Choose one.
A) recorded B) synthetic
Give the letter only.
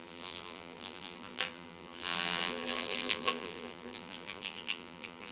B